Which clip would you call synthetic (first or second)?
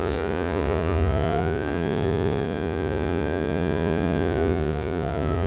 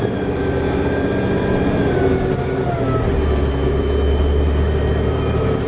first